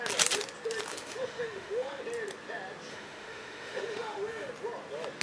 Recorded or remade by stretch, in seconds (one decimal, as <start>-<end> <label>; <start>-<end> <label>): 0.0-0.9 recorded; 0.9-2.0 remade; 2.0-2.9 recorded; 2.9-4.5 remade; 4.5-5.2 recorded